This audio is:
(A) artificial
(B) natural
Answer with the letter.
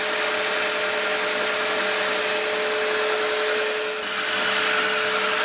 B